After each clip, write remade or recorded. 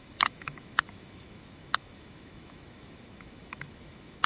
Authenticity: remade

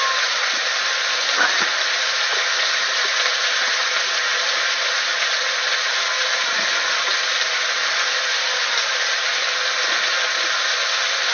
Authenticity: recorded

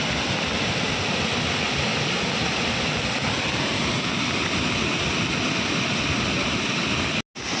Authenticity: recorded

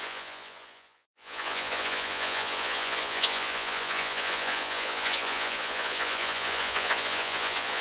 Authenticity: remade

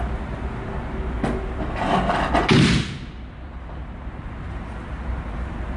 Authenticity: recorded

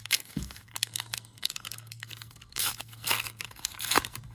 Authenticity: remade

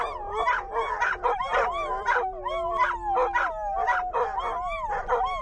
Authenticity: recorded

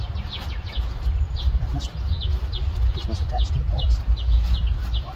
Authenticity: recorded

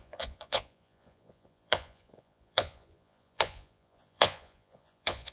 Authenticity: remade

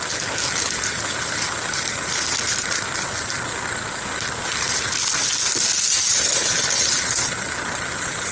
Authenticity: recorded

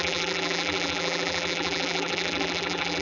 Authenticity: remade